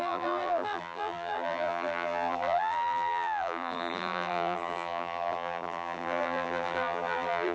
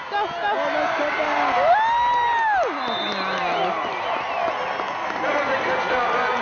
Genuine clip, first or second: second